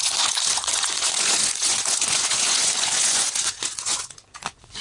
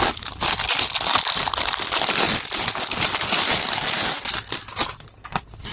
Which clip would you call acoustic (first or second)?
second